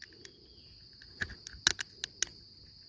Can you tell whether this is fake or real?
real